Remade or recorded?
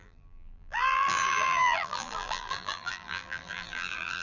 remade